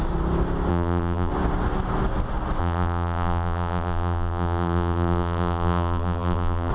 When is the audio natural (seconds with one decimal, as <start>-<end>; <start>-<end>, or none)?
0.0-0.7; 1.3-2.6